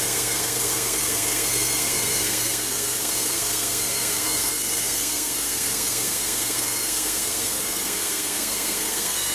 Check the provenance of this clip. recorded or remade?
remade